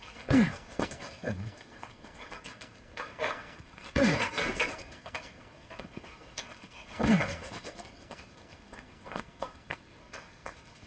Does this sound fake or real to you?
fake